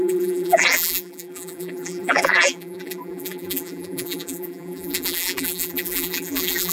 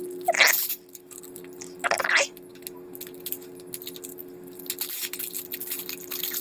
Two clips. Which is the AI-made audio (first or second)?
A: first